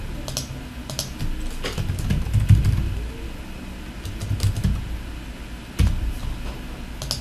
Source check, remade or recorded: recorded